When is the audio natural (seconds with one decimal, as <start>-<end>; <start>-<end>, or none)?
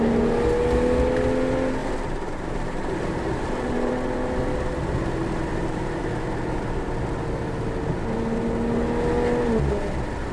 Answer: 0.0-1.8; 3.9-5.5; 6.2-10.3